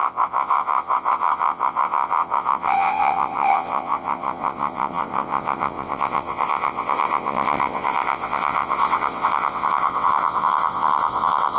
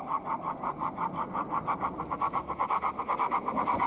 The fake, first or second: first